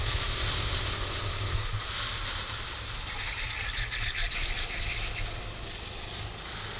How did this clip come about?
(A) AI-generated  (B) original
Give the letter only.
B